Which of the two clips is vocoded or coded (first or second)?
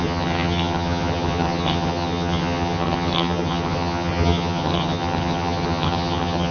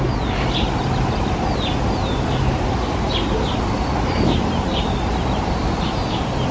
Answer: first